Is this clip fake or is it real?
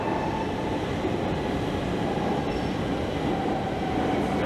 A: real